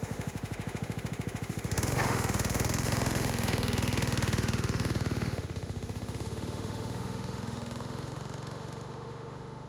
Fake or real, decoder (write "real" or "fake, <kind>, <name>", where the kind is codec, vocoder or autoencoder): fake, autoencoder, DAC-VAE